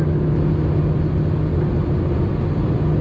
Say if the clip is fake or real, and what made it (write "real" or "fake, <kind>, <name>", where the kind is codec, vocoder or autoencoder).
real